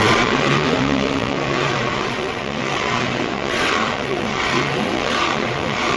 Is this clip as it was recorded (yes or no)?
no